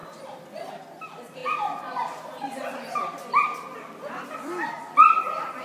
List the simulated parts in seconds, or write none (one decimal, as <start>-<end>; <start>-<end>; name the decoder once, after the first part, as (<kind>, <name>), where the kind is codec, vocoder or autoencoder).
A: 0.0-0.7 (vocoder, BigVGAN v2); 4.2-4.8